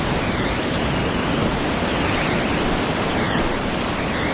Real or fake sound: real